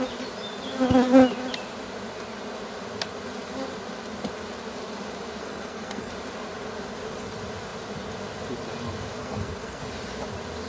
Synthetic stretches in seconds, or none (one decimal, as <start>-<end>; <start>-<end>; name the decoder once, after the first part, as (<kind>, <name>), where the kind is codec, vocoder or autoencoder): 5.4-6.1 (codec, SNAC); 9.2-9.8